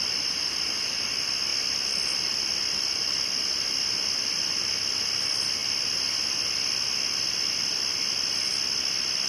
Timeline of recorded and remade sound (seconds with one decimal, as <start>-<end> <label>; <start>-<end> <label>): 0.0-9.3 recorded